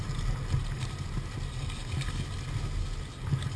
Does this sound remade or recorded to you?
recorded